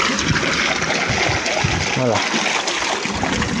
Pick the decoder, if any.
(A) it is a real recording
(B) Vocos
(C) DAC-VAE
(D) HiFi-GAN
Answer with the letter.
A